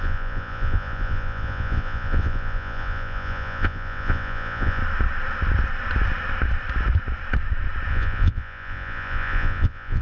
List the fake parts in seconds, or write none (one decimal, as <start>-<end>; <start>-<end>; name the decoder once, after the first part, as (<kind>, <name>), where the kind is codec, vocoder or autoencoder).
0.0-4.8 (vocoder, Vocos); 7.9-10.0